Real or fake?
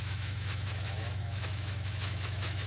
fake